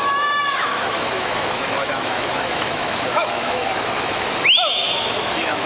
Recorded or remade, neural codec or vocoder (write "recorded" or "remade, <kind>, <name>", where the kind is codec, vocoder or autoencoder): remade, autoencoder, DAC-VAE